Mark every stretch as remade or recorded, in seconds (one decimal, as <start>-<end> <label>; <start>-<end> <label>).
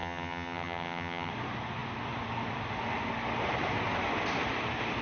0.0-1.3 remade; 1.3-5.0 recorded